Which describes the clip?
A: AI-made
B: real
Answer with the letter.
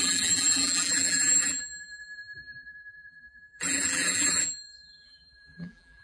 A